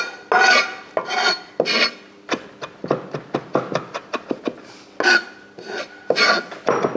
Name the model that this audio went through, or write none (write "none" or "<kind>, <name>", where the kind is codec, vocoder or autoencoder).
none